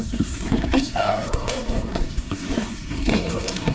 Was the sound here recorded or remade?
remade